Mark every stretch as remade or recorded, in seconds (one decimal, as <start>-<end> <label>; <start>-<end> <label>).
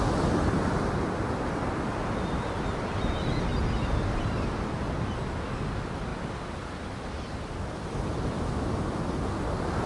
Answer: 0.0-3.5 recorded; 3.5-4.8 remade; 4.8-6.1 recorded; 6.1-8.3 remade; 8.3-9.9 recorded